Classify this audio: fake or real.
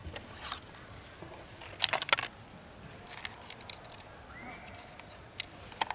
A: real